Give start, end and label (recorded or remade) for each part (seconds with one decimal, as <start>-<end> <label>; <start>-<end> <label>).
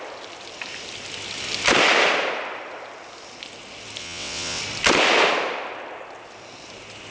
0.0-4.0 recorded; 4.0-4.6 remade; 4.6-7.1 recorded